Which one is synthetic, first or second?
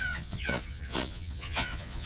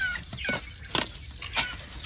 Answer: first